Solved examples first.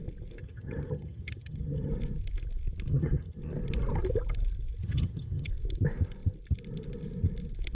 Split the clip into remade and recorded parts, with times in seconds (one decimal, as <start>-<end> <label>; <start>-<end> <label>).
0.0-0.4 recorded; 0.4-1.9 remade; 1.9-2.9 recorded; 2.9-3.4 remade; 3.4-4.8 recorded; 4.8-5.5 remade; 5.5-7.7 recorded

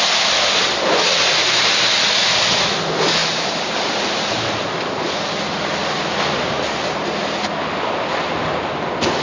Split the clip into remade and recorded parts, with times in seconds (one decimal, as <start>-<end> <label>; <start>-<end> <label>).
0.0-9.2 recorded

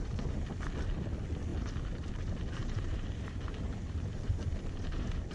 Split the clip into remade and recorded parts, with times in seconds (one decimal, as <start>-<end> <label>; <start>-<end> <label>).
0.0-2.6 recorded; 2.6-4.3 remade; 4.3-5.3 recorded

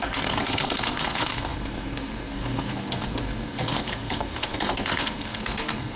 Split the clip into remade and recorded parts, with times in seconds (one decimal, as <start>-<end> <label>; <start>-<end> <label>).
0.0-6.0 remade

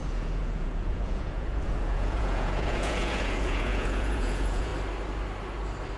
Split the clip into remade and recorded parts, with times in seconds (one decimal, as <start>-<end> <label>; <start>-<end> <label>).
0.0-4.7 remade; 4.7-6.0 recorded

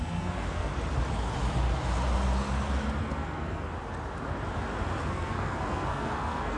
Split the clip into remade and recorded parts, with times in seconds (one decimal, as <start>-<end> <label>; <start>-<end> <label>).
0.0-0.7 remade; 0.7-3.0 recorded; 3.0-3.7 remade; 3.7-5.1 recorded; 5.1-6.6 remade